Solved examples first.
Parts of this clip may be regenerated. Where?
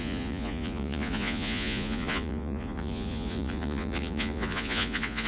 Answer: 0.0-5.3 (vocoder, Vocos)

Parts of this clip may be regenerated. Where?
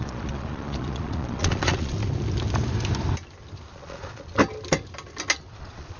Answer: 0.0-2.0 (vocoder, Vocos); 3.7-4.4; 5.5-6.0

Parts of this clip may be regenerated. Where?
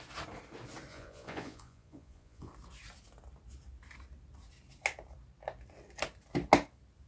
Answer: 0.9-2.5 (vocoder, Vocos)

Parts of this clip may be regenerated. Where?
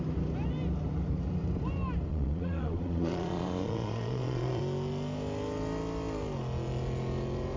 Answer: 2.1-4.6 (vocoder, Vocos)